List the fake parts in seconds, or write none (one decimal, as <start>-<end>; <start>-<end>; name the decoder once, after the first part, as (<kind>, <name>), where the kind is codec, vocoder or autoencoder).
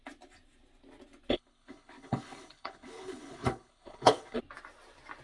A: 1.3-4.4 (codec, HILCodec)